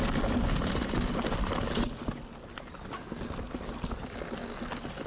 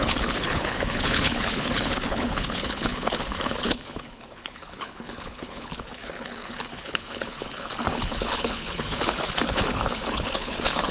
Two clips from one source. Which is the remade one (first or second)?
second